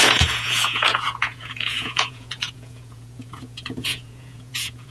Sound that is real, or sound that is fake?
fake